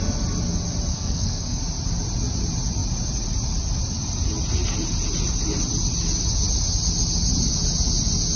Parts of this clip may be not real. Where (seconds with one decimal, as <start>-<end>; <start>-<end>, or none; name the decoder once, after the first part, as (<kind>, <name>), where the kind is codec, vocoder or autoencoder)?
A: 0.9-1.6 (codec, SNAC)